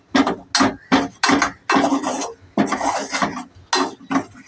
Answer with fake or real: real